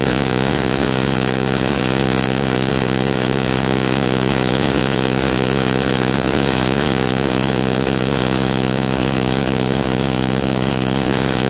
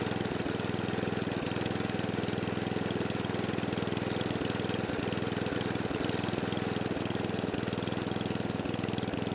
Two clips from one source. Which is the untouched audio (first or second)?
second